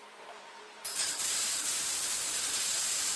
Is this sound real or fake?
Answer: fake